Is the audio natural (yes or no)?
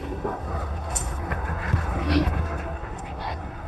no